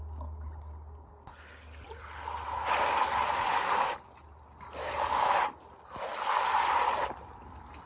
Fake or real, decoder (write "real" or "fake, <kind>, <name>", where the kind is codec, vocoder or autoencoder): real